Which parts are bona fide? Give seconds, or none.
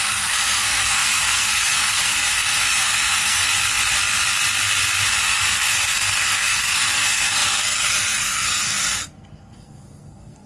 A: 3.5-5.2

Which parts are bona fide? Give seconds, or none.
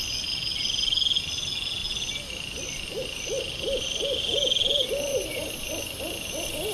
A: 0.0-5.1; 5.7-6.7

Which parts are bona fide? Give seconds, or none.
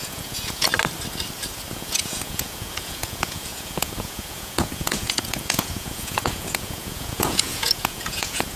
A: 0.7-1.7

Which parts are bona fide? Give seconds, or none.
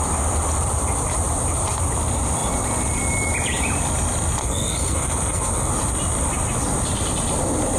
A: 0.0-4.4; 5.7-7.8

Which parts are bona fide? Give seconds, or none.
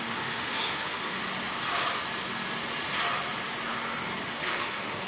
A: 1.2-4.3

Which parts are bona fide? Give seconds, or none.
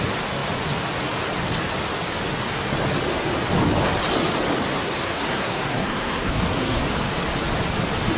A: 0.0-4.8; 6.8-8.2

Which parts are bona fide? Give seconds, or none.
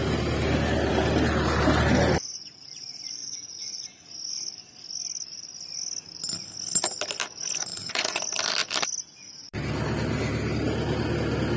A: 0.0-3.2; 3.7-7.7; 8.2-11.6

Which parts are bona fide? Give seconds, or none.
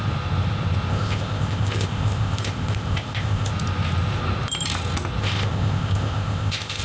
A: 0.0-0.9; 3.5-5.2